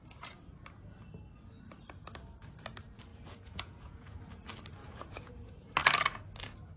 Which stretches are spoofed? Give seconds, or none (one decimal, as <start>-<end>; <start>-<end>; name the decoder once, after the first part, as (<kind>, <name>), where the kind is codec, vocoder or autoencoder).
3.1-4.2 (vocoder, Vocos); 4.8-5.7